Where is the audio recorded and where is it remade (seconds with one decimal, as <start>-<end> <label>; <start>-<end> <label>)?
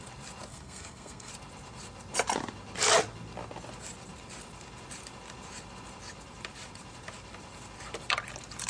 0.0-0.5 recorded; 0.5-1.3 remade; 1.3-8.7 recorded